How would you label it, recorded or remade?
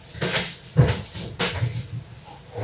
recorded